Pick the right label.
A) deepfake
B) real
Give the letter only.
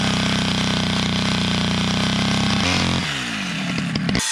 B